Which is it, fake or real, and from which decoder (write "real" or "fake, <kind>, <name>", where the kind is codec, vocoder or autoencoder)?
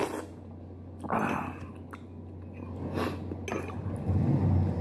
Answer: real